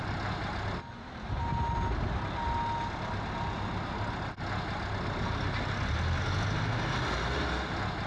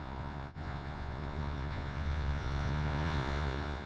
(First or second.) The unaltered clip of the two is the first